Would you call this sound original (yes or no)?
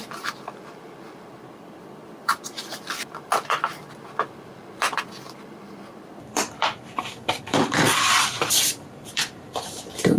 no